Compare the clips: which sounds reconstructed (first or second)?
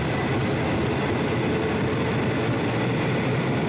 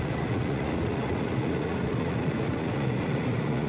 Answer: second